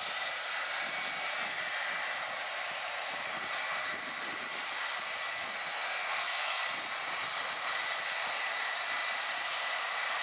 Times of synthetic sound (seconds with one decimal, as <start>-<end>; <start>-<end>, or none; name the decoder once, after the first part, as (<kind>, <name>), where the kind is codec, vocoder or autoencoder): 5.3-6.6 (codec, SNAC)